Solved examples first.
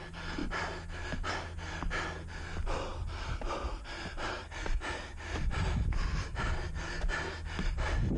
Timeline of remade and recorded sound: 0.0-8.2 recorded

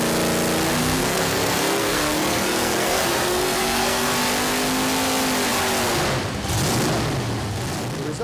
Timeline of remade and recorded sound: 0.0-0.8 recorded; 0.8-4.1 remade; 4.1-8.2 recorded

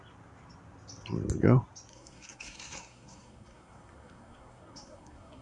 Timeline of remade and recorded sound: 0.0-1.9 recorded; 1.9-5.4 remade

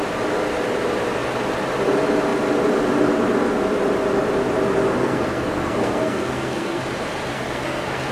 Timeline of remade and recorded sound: 0.0-5.0 recorded; 5.0-6.8 remade; 6.8-7.3 recorded; 7.3-8.1 remade

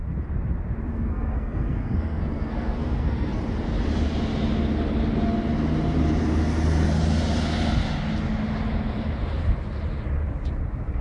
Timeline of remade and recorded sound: 0.0-0.9 recorded; 0.9-3.4 remade; 3.4-11.0 recorded

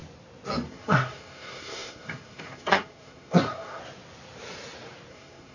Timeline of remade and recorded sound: 0.0-0.7 recorded; 0.7-3.8 remade; 3.8-5.1 recorded; 5.1-5.5 remade

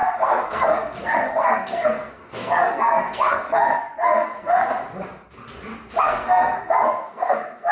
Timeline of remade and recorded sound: 0.0-4.7 remade; 4.7-6.0 recorded; 6.0-7.7 remade